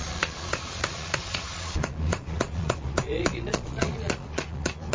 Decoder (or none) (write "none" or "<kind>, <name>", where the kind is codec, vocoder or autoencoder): vocoder, Vocos